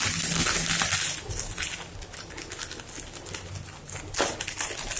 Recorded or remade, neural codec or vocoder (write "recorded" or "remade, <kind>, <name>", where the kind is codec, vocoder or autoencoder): recorded